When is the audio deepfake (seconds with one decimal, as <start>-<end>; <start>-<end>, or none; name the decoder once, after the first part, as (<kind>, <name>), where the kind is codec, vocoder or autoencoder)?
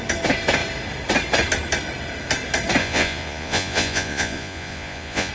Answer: 2.8-5.3 (vocoder, Vocos)